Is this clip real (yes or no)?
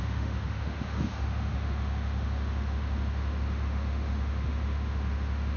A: no